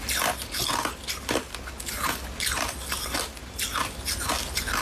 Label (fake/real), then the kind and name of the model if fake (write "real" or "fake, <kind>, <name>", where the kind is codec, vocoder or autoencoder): real